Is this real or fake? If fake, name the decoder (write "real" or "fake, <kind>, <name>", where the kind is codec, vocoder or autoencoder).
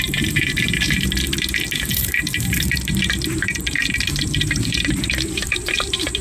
fake, vocoder, BigVGAN v2